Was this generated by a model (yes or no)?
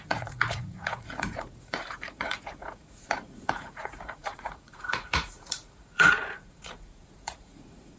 yes